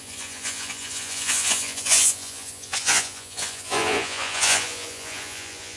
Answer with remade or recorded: remade